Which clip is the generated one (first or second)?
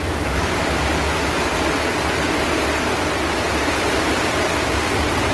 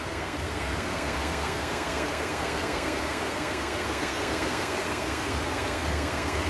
second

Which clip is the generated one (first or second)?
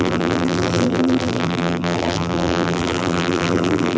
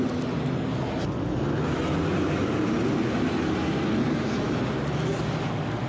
first